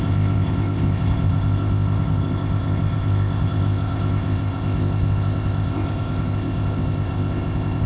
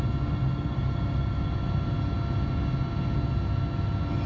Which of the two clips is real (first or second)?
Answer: second